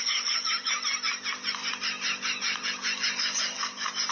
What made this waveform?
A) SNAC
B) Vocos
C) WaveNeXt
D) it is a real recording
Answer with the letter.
D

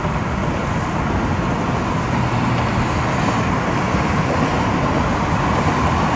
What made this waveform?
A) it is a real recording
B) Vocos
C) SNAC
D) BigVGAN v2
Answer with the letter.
A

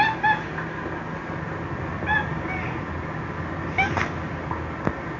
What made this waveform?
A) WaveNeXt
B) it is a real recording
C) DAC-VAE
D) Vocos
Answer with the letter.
B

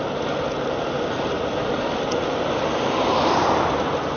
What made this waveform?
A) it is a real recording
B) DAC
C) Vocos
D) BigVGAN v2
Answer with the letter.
A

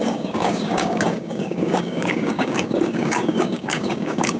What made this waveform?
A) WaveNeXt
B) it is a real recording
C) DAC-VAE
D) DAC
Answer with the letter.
D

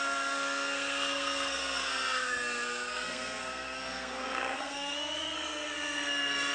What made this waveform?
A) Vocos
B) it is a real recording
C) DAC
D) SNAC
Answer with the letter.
D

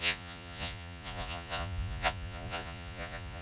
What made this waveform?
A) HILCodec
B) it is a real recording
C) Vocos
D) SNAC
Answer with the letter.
C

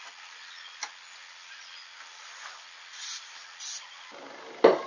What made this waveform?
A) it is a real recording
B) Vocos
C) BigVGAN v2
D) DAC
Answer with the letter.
A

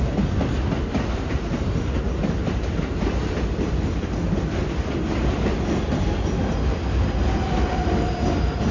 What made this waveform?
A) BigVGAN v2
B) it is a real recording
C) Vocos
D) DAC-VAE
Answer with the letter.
B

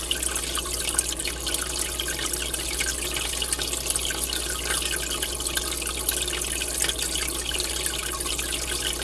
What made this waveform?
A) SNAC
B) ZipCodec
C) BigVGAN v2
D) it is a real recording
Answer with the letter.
D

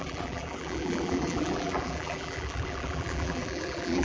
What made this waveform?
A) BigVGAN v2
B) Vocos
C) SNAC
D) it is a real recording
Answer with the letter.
A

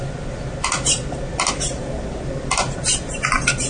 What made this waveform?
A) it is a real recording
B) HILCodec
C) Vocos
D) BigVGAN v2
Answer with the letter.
D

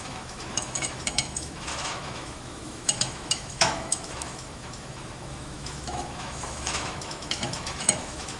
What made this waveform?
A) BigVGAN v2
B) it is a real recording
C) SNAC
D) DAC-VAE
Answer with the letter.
D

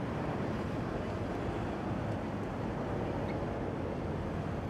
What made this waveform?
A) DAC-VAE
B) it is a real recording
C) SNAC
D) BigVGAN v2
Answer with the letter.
B